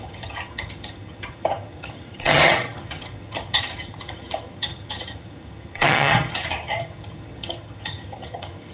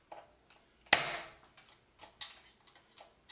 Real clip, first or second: second